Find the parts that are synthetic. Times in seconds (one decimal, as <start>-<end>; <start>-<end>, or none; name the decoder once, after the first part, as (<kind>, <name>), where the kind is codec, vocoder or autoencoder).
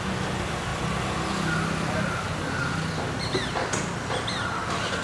none